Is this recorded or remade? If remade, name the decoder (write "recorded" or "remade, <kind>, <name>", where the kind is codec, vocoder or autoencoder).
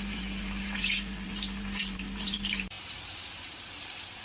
remade, vocoder, BigVGAN v2